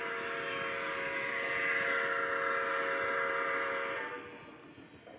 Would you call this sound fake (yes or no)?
no